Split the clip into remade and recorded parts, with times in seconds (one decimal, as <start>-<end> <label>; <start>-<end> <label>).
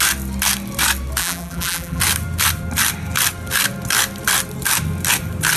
0.0-1.2 recorded; 1.2-2.0 remade; 2.0-5.6 recorded